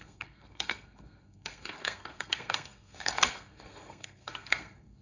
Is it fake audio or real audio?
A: fake